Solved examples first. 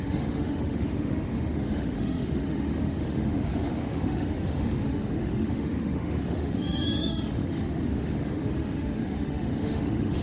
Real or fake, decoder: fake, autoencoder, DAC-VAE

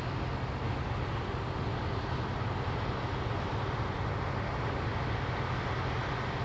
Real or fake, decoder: real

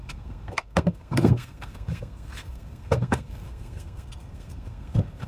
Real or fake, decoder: fake, codec, SNAC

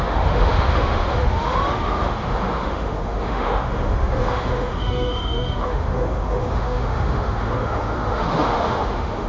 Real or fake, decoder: fake, autoencoder, DAC-VAE